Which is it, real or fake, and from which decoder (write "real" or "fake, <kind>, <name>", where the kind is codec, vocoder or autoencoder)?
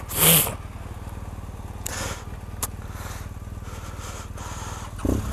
real